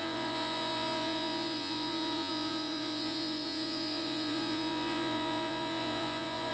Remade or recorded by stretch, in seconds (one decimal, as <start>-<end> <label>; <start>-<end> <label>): 0.0-6.5 remade